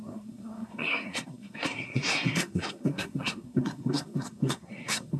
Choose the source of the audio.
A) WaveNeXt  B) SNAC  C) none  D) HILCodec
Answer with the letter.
B